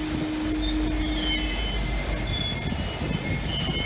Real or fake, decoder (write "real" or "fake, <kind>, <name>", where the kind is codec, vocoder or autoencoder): real